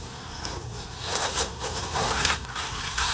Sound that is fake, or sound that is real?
fake